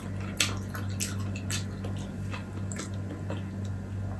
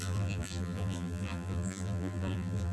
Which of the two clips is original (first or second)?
first